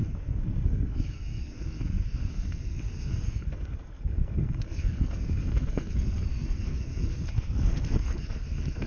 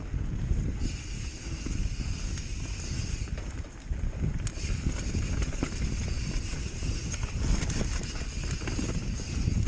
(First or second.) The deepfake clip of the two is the first